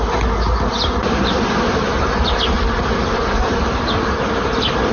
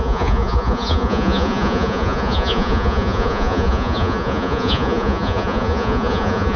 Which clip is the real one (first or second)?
first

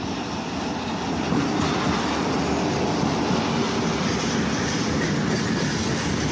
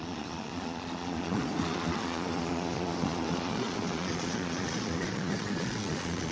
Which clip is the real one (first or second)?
first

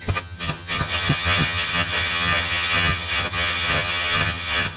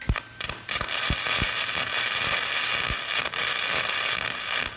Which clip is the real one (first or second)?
second